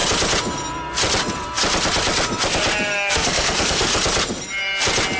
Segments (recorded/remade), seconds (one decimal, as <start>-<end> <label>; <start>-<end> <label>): 0.0-3.1 recorded; 3.1-3.9 remade; 3.9-5.2 recorded